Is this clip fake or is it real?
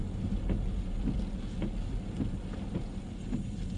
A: real